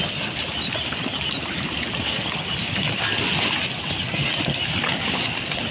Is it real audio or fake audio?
real